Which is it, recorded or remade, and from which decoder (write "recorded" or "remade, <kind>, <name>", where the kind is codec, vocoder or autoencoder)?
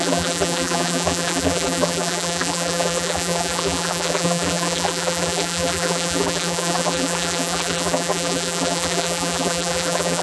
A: remade, vocoder, BigVGAN v2